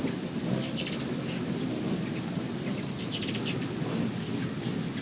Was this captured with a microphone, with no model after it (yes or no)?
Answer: yes